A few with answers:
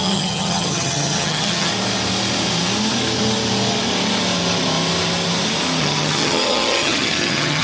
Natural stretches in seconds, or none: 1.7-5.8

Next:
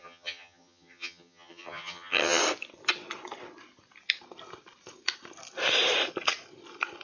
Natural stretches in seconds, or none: 2.4-7.0

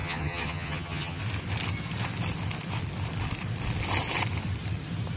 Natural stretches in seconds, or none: 1.2-5.2

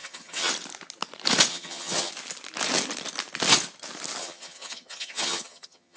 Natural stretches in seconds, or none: 0.5-1.5; 2.1-4.2